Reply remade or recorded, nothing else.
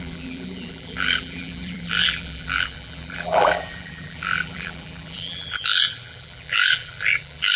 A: remade